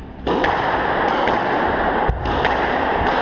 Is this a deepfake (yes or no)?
no